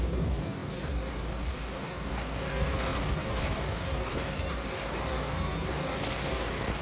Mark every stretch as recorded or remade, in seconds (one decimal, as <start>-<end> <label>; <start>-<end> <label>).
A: 0.0-6.8 remade